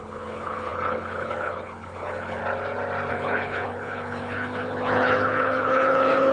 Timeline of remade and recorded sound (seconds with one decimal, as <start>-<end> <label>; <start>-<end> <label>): 0.0-2.4 remade; 2.4-3.1 recorded; 3.1-6.3 remade